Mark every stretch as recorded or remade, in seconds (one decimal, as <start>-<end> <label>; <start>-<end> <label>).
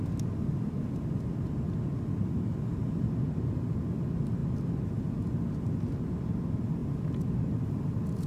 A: 0.0-8.3 recorded